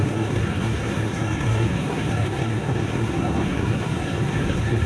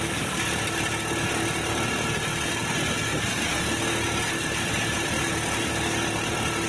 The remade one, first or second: first